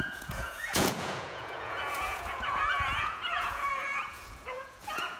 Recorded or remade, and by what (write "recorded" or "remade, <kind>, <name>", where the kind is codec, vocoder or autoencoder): remade, vocoder, Vocos